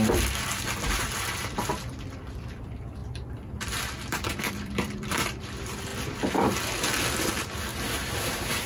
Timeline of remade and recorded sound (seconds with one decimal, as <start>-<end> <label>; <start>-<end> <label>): 0.0-5.9 remade; 5.9-7.3 recorded; 7.3-7.7 remade; 7.7-8.7 recorded